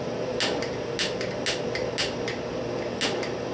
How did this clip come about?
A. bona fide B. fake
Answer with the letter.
A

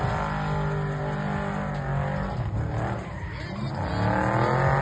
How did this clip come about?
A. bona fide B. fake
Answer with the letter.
A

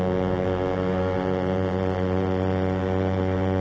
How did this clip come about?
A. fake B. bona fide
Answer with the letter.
A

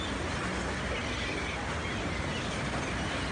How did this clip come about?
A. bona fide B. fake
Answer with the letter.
A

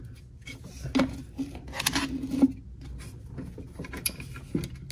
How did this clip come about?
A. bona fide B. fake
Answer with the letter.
A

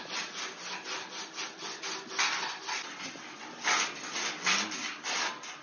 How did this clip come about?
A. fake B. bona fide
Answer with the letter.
B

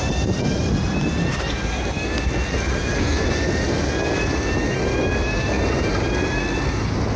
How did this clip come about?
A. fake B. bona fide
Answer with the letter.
B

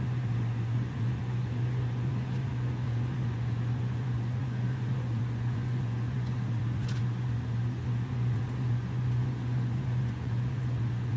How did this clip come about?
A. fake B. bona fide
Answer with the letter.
A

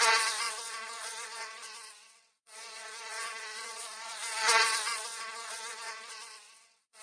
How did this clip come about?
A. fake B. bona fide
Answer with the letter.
A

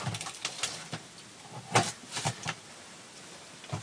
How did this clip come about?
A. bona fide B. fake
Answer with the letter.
A